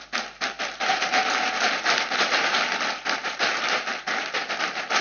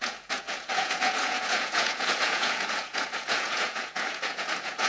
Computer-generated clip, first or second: second